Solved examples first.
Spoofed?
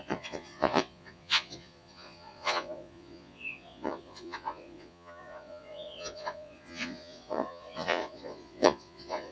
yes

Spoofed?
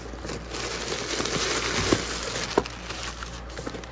no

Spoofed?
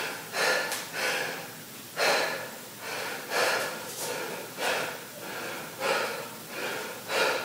no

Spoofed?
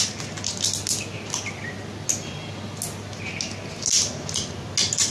no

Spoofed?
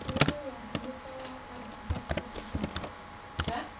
no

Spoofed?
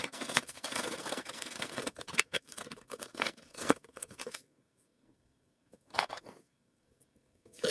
yes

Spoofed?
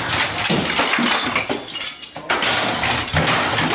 no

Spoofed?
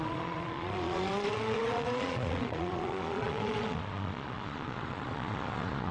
yes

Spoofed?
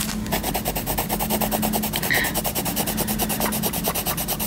no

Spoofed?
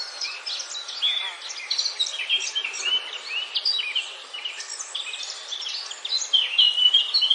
no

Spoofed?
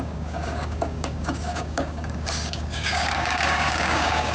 yes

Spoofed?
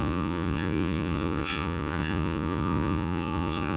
yes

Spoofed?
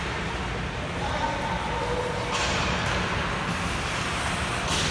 no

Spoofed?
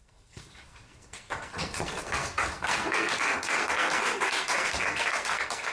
yes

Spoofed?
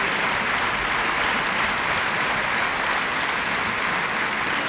no